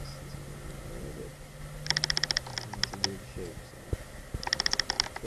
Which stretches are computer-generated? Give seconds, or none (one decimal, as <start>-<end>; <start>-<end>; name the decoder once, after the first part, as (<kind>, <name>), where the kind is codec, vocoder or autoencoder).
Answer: none

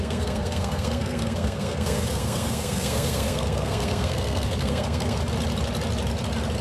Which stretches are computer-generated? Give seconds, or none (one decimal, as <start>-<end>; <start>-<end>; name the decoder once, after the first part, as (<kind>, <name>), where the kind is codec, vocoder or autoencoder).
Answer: 0.0-5.2 (codec, SNAC)

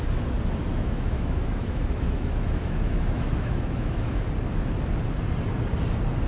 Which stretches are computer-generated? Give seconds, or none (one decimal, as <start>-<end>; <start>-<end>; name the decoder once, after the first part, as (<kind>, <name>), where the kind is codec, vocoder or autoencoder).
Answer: 0.7-4.2 (autoencoder, DAC-VAE)

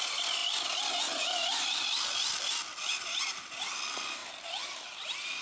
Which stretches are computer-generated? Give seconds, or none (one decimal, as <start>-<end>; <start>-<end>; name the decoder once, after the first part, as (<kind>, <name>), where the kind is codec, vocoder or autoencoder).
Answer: none

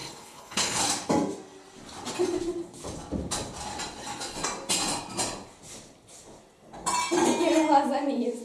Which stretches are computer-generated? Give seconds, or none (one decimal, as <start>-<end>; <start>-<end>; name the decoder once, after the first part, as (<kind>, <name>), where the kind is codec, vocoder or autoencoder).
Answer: 0.0-0.8 (codec, HILCodec)

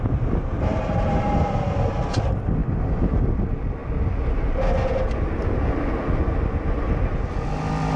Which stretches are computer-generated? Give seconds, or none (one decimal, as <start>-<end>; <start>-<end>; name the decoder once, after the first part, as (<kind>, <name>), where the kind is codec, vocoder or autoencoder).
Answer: 0.7-1.6 (vocoder, BigVGAN v2); 2.6-3.2

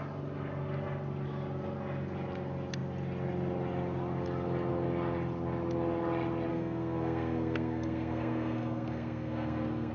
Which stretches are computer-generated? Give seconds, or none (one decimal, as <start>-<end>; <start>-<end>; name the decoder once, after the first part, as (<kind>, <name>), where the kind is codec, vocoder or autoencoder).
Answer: 6.5-9.9 (codec, SNAC)

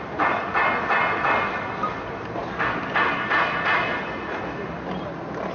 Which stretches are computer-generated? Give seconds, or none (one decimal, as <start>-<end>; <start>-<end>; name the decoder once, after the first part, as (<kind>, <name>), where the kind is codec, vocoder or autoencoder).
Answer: none